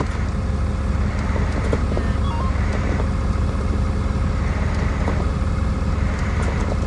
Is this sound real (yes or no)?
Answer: yes